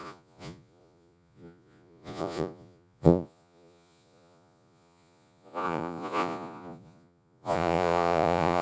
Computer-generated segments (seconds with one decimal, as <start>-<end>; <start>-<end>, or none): 0.0-8.6